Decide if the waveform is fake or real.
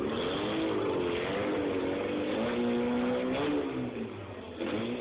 real